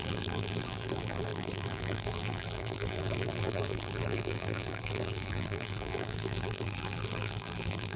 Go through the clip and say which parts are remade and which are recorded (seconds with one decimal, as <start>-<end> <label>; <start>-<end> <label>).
0.0-8.0 remade

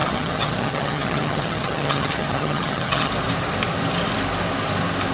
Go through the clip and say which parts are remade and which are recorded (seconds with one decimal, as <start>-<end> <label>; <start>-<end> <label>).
0.0-3.1 remade; 3.1-5.1 recorded

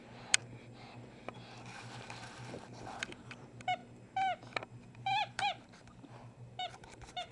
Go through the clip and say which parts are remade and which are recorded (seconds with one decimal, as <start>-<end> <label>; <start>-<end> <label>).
0.0-0.4 remade; 0.4-1.8 recorded; 1.8-3.8 remade; 3.8-4.9 recorded; 4.9-7.3 remade